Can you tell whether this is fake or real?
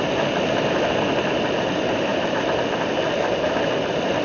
real